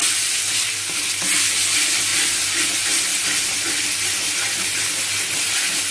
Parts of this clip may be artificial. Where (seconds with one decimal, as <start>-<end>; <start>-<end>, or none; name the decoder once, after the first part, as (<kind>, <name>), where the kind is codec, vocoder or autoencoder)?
none